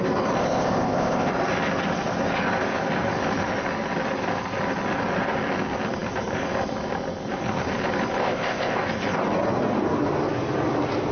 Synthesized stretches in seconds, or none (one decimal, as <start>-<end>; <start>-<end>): 0.4-1.3; 8.2-8.8